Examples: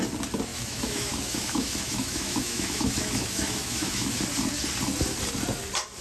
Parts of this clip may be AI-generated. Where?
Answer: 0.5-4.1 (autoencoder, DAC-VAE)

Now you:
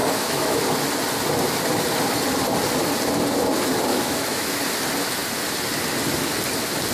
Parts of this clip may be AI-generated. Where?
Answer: 0.0-0.6 (autoencoder, DAC-VAE); 3.9-4.6

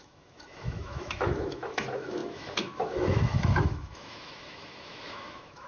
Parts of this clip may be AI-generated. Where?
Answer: 0.0-5.7 (autoencoder, DAC-VAE)

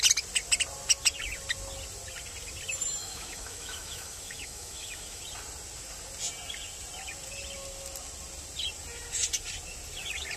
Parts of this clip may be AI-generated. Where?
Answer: 3.0-5.2 (autoencoder, DAC-VAE)

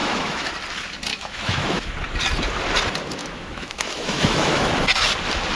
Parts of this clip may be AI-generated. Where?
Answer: 0.0-0.5 (autoencoder, DAC-VAE); 1.1-1.9; 3.2-4.7

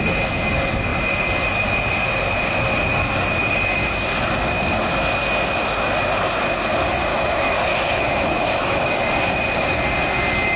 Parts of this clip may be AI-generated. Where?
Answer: 7.1-9.0 (autoencoder, DAC-VAE)

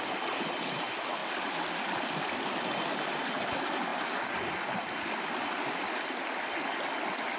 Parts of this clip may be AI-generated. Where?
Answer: none